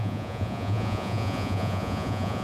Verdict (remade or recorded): remade